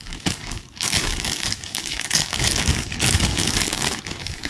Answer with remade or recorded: remade